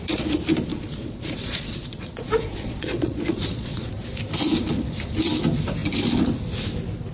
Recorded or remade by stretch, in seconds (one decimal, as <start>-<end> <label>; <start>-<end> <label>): 0.0-0.7 recorded; 0.7-3.9 remade; 3.9-7.1 recorded